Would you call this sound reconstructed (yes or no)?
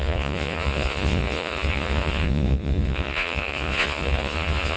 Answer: yes